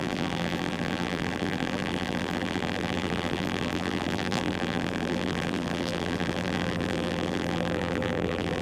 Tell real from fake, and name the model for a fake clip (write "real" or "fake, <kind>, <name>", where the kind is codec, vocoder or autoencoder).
fake, vocoder, BigVGAN v2